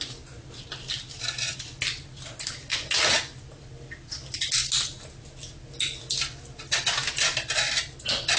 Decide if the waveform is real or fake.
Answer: real